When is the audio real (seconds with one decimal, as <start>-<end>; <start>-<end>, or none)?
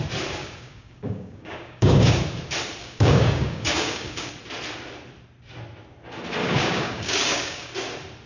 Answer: 0.0-0.4; 2.2-2.8; 4.3-6.4; 7.7-8.3